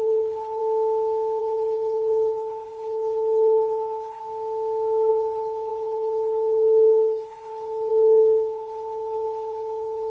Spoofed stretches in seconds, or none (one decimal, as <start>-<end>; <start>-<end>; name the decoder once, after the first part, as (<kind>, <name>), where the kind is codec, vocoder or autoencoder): 0.0-0.6 (codec, HILCodec); 1.4-4.2; 5.1-10.1